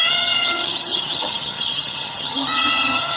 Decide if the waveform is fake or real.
fake